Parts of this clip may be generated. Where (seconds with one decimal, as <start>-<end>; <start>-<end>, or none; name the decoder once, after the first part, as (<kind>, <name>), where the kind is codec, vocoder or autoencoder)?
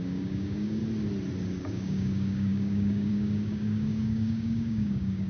0.0-0.8 (codec, DAC); 1.6-5.3